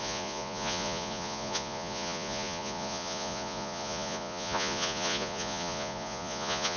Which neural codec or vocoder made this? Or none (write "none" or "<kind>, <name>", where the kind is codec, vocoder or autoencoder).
vocoder, Vocos